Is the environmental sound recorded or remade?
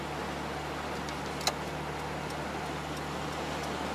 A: recorded